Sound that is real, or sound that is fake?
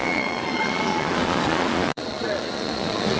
fake